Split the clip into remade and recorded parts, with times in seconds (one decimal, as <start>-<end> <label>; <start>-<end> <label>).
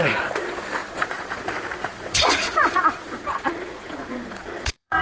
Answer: 0.0-0.8 recorded; 0.8-1.4 remade; 1.4-1.9 recorded; 1.9-5.0 remade